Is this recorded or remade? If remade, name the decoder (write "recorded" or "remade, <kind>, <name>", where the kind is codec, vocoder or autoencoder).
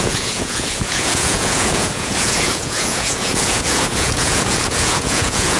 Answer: remade, vocoder, Vocos